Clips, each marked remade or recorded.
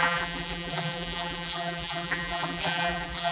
remade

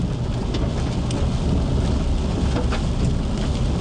recorded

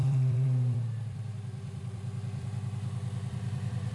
remade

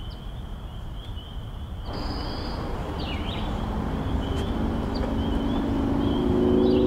recorded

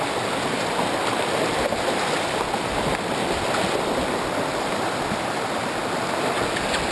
recorded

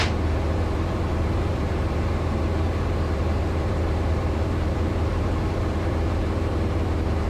remade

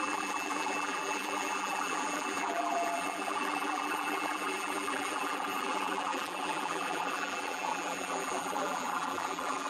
remade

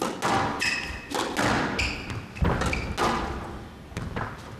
recorded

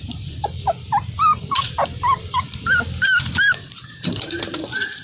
remade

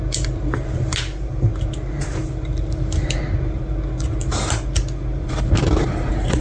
recorded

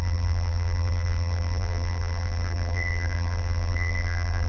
remade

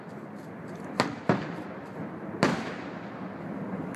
remade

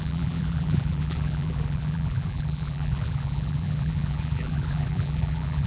remade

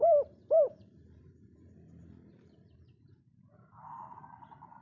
remade